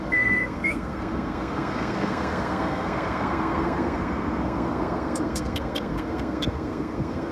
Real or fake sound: fake